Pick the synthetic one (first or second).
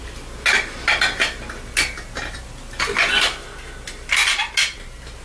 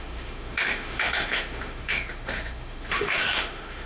second